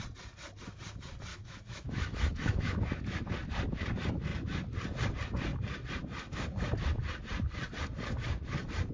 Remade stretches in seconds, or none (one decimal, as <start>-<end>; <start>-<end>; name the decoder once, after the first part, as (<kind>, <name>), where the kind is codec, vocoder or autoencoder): 1.3-3.3 (autoencoder, DAC-VAE)